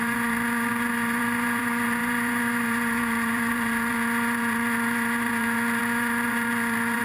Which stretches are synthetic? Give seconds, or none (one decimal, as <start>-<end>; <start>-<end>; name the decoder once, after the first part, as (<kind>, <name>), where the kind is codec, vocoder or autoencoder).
0.0-7.0 (vocoder, BigVGAN v2)